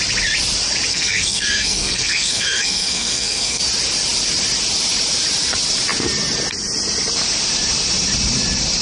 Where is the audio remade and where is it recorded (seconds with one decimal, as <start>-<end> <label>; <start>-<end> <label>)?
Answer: 0.0-0.9 recorded; 0.9-3.6 remade; 3.6-8.8 recorded